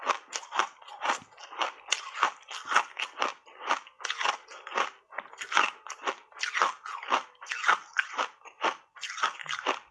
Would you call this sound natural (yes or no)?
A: yes